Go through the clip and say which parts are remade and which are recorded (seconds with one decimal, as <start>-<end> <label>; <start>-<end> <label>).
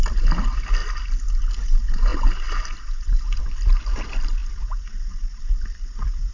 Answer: 0.0-6.3 recorded